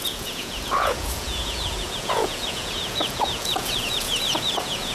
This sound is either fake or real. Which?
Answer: fake